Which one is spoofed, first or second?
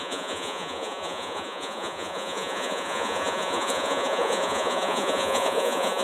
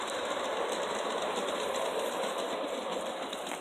first